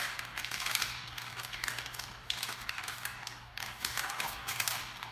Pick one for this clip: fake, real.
fake